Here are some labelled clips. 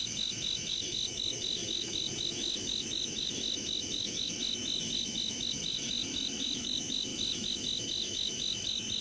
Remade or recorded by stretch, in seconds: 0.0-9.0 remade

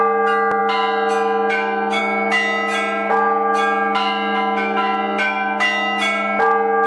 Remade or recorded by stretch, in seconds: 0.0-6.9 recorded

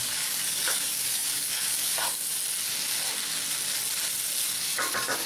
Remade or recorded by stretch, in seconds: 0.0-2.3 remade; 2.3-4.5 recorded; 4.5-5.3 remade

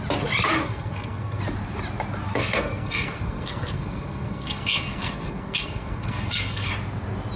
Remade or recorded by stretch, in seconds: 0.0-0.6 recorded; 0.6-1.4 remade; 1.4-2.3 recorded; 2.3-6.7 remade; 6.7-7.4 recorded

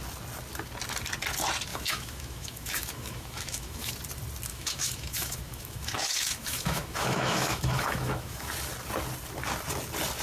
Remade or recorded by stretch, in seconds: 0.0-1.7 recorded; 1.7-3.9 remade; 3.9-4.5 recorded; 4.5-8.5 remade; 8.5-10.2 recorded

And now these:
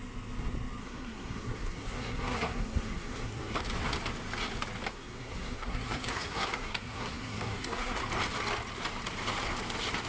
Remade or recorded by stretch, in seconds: 0.0-0.8 recorded; 0.8-3.6 remade; 3.6-4.9 recorded; 4.9-8.0 remade; 8.0-10.1 recorded

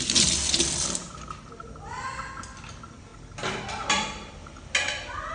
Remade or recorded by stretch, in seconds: 0.0-5.3 recorded